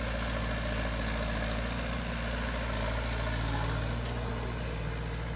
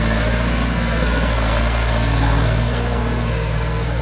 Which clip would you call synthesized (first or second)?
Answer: second